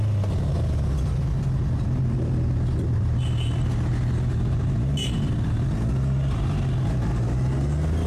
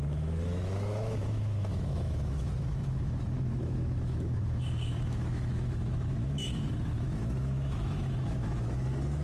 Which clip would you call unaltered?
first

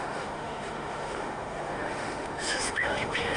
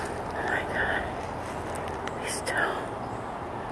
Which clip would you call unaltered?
second